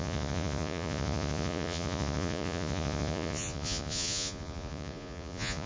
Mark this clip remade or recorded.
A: remade